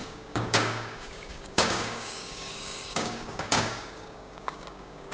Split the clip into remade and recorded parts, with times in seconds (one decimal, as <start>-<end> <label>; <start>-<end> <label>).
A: 0.0-5.1 remade